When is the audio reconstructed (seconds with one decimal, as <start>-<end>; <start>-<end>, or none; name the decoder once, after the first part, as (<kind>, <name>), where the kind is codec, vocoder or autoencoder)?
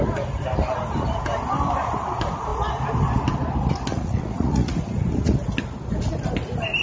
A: 3.9-4.7 (vocoder, Vocos)